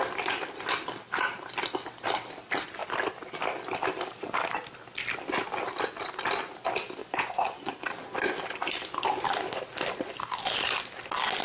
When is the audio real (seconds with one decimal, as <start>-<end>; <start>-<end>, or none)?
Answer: 0.0-7.0; 7.7-11.4